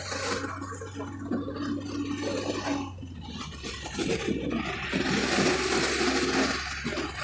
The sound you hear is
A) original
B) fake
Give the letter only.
A